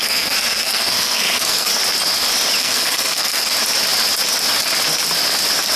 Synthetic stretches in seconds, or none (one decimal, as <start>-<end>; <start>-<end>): 0.0-1.7; 2.6-3.4